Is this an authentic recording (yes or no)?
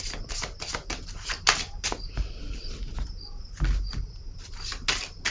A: yes